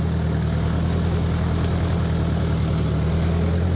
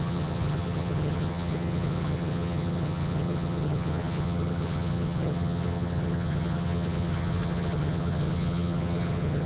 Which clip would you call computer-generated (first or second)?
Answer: second